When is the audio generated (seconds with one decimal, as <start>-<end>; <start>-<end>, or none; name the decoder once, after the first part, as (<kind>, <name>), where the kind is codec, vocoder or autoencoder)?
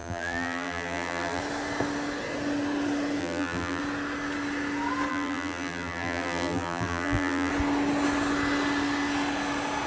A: 0.0-1.4 (vocoder, BigVGAN v2); 3.2-3.8; 5.1-7.5